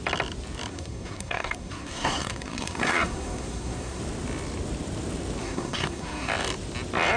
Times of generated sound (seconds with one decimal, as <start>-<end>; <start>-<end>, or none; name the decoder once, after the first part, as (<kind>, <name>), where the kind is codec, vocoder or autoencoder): 0.7-4.0 (codec, SNAC); 5.4-6.3